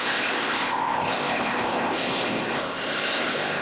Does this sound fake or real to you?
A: fake